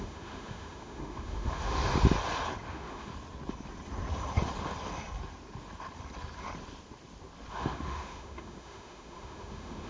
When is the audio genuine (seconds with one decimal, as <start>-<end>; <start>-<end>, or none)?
1.9-2.7; 3.1-7.5